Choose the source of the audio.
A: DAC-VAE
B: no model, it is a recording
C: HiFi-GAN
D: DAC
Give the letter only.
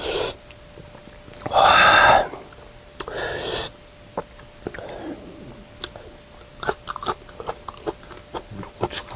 B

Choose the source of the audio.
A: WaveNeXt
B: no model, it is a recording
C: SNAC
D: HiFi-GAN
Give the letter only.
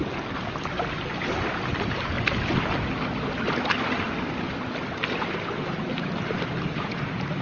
B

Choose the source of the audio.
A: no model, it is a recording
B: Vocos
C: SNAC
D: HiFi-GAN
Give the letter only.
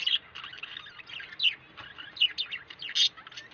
A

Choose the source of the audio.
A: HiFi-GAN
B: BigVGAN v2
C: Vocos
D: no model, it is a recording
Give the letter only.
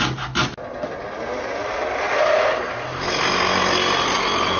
D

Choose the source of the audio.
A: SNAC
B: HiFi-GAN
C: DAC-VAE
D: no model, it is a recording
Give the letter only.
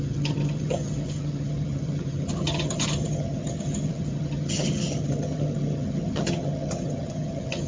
B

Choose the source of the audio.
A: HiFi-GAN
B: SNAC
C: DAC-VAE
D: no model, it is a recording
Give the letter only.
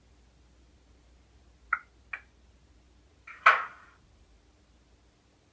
D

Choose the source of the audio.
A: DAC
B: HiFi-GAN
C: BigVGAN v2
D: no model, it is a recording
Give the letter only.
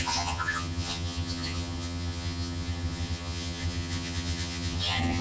B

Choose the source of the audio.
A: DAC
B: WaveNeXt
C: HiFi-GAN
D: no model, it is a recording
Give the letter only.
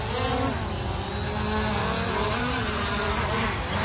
D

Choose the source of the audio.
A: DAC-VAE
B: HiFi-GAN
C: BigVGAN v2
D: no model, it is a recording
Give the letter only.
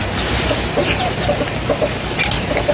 D